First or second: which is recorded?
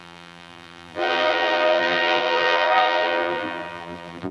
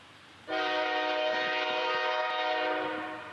second